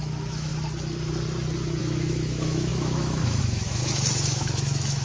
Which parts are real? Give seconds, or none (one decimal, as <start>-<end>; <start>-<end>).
0.5-1.8